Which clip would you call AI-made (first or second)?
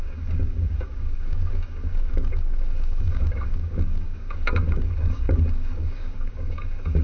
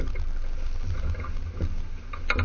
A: first